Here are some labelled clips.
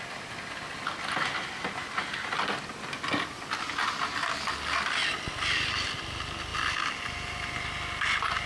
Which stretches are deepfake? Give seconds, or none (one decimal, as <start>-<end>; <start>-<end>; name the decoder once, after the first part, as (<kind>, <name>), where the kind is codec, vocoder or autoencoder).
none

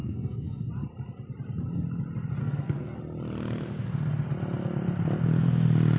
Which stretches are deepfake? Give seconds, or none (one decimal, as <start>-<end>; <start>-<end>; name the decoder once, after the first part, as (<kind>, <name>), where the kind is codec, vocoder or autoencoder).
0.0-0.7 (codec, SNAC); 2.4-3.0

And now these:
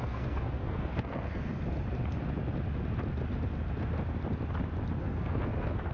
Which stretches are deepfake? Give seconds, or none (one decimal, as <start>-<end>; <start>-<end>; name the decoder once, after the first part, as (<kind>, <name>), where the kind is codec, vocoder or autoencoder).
0.0-1.5 (codec, SNAC); 5.0-5.9

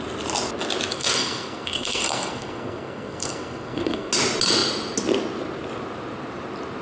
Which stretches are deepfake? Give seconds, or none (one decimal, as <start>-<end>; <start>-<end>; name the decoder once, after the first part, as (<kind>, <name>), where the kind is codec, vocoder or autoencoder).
0.9-4.1 (codec, SNAC)

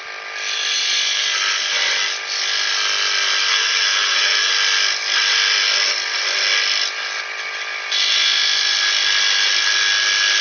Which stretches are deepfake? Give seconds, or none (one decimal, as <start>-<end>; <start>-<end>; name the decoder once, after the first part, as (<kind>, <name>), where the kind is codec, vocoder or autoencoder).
3.5-4.5 (codec, SNAC)

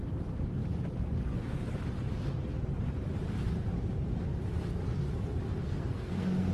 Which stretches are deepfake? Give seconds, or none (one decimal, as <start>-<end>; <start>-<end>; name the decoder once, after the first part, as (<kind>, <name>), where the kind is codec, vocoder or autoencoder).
5.6-6.5 (codec, SNAC)

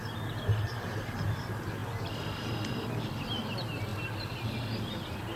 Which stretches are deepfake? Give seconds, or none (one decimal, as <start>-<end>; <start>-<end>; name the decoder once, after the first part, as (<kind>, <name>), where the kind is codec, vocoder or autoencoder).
none

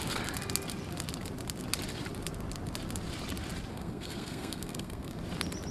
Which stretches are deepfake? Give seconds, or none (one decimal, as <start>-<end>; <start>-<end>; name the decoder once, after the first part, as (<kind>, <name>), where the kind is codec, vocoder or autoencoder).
3.7-5.2 (codec, SNAC)